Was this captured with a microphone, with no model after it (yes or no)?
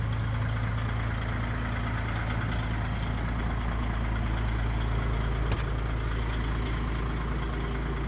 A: yes